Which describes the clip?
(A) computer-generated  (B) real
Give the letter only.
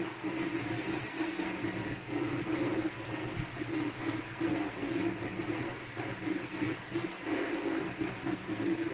A